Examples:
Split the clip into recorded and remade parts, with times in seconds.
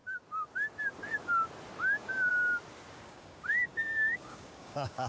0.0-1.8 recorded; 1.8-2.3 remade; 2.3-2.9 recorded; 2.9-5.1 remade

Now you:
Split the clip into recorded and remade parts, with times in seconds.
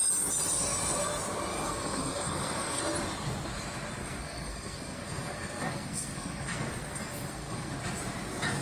0.0-1.5 recorded; 1.5-2.8 remade; 2.8-4.0 recorded; 4.0-7.7 remade; 7.7-8.6 recorded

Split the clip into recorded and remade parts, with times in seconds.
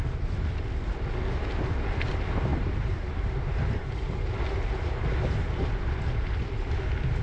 0.0-2.5 recorded; 2.5-6.8 remade; 6.8-7.2 recorded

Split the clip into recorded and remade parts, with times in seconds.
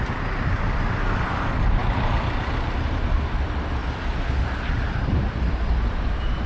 0.0-6.5 recorded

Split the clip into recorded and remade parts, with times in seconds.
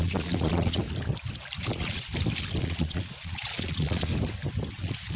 0.0-0.8 remade; 0.8-1.6 recorded; 1.6-2.1 remade; 2.1-2.6 recorded; 2.6-4.1 remade; 4.1-4.7 recorded; 4.7-5.2 remade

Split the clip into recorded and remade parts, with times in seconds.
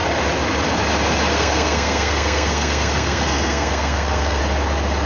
0.0-1.3 recorded; 1.3-4.4 remade; 4.4-5.1 recorded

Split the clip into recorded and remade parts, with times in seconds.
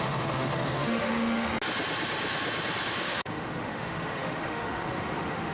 0.0-1.5 remade; 1.5-3.0 recorded; 3.0-5.5 remade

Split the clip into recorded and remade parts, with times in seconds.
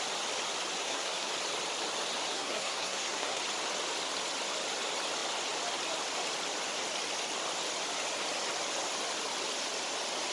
0.0-0.8 recorded; 0.8-1.3 remade; 1.3-2.3 recorded; 2.3-3.4 remade; 3.4-10.3 recorded